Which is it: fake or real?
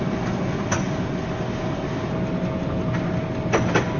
real